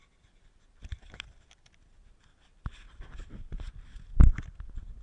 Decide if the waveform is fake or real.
real